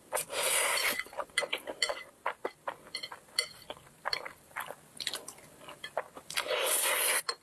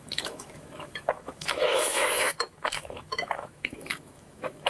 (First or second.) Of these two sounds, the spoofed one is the second